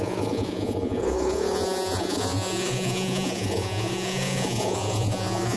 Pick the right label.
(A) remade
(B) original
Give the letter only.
A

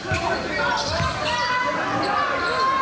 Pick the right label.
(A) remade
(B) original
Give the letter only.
B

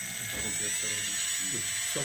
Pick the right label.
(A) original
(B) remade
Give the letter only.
A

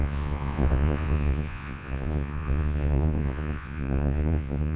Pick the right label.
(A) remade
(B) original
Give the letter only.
A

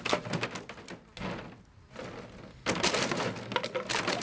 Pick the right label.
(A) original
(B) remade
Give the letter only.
A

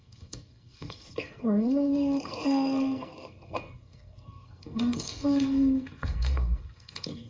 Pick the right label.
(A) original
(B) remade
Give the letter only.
B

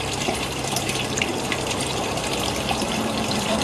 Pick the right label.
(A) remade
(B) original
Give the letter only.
A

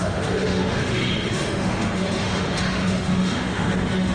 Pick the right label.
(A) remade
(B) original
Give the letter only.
A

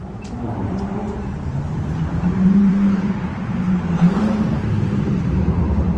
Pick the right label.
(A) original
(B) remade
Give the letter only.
B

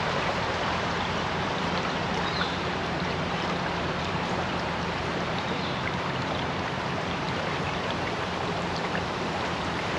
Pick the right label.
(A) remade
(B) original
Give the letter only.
A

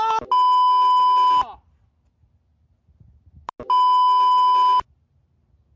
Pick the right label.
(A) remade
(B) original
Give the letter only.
B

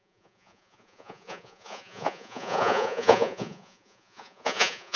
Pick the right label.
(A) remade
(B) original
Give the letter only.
A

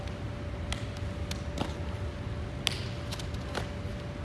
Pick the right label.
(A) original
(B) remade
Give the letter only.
A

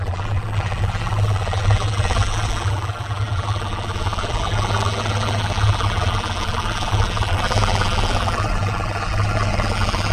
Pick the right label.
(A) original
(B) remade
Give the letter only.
B